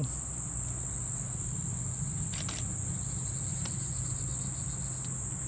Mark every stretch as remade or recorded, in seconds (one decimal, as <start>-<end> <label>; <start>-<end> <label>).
0.0-3.5 recorded; 3.5-4.2 remade; 4.2-5.5 recorded